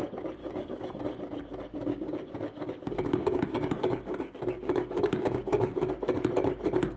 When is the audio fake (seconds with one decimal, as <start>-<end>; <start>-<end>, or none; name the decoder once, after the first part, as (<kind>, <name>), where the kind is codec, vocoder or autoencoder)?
0.4-1.0 (codec, DAC); 1.7-5.9